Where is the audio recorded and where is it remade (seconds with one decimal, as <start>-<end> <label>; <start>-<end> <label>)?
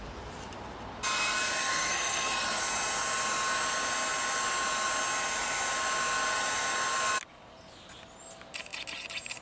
0.0-1.7 recorded; 1.7-2.6 remade; 2.6-9.4 recorded